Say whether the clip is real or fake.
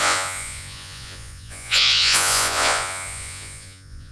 fake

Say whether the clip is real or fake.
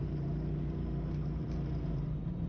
fake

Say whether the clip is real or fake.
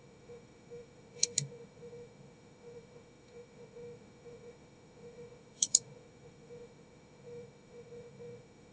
fake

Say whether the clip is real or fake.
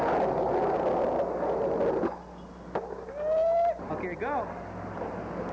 real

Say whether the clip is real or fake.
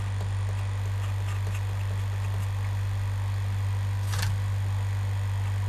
real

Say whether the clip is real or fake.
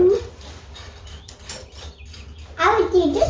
real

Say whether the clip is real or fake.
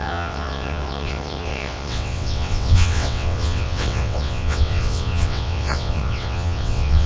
fake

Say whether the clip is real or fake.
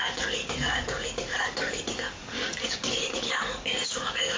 fake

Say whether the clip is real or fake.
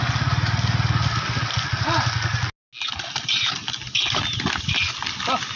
real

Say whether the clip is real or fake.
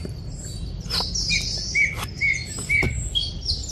real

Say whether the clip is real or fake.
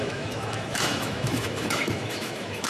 fake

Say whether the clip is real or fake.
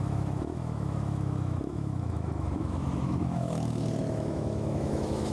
fake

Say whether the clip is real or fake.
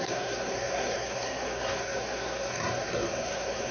fake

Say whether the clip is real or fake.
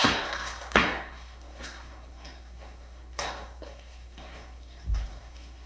fake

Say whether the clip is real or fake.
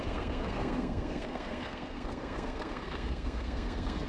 fake